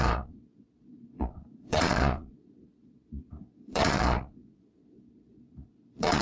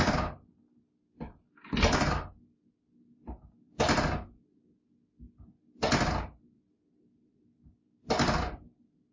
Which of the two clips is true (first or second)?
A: second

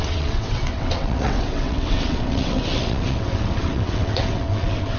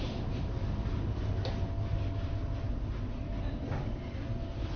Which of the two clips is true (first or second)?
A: second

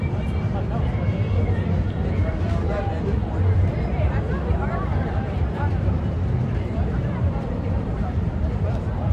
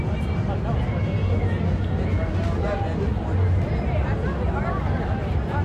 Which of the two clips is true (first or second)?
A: second